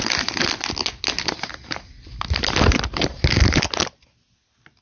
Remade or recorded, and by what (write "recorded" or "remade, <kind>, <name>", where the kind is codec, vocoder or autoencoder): recorded